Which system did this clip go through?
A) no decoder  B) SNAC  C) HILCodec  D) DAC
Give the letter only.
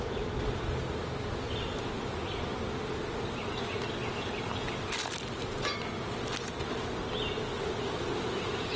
A